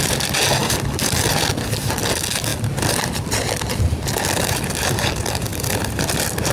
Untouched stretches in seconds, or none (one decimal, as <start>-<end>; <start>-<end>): 0.0-0.6; 1.4-2.5; 3.8-5.5; 6.1-6.5